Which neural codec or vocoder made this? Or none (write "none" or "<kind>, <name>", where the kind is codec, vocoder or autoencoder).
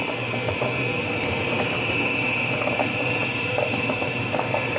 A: vocoder, BigVGAN v2